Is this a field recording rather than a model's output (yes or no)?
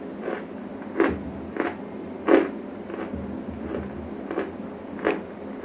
yes